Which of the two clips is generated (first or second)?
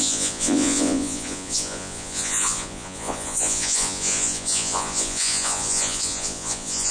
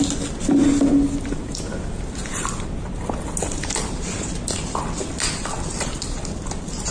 first